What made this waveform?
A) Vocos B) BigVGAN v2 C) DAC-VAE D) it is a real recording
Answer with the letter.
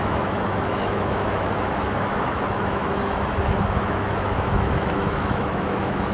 C